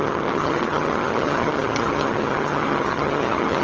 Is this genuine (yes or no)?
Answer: no